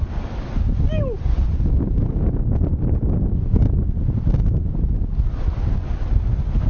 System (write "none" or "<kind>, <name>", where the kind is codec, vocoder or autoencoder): none